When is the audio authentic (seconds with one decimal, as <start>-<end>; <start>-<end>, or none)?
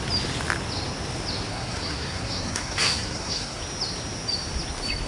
0.0-1.5; 3.6-5.1